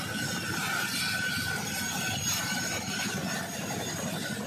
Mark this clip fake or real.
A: real